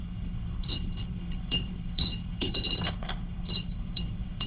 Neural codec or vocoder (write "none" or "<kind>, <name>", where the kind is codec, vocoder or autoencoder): codec, HILCodec